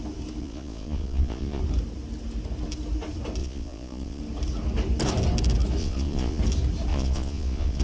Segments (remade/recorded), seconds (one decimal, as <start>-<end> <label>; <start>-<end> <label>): 0.0-0.4 recorded; 0.4-1.6 remade; 1.6-3.4 recorded; 3.4-4.2 remade; 4.2-5.8 recorded; 5.8-6.4 remade; 6.4-6.9 recorded; 6.9-7.8 remade